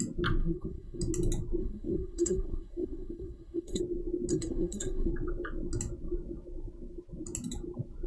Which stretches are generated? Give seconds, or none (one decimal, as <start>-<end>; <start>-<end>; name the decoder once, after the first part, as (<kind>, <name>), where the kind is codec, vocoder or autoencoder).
0.4-1.0 (codec, SNAC); 1.6-3.8; 4.3-5.1